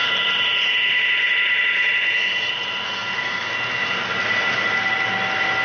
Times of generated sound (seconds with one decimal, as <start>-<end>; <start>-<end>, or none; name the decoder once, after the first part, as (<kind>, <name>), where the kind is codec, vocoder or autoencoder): none